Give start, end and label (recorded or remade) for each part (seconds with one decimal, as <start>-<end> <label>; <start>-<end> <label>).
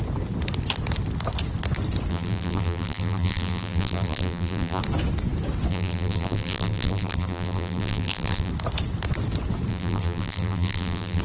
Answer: 0.0-2.1 recorded; 2.1-4.8 remade; 4.8-5.7 recorded; 5.7-8.5 remade; 8.5-9.7 recorded; 9.7-11.2 remade